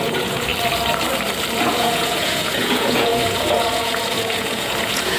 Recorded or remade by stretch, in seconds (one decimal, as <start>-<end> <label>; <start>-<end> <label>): 0.0-0.5 remade; 0.5-1.6 recorded; 1.6-5.2 remade